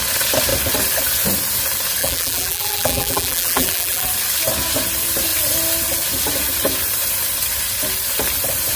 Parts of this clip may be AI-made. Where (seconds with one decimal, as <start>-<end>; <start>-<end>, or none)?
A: 2.0-4.1